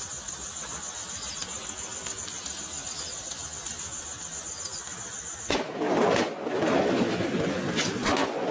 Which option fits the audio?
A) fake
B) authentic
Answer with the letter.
B